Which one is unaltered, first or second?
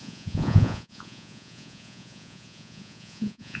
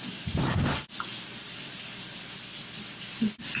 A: second